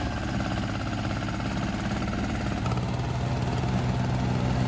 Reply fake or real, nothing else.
real